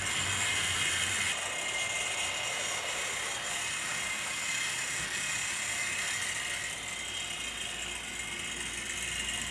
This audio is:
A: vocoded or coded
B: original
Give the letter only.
B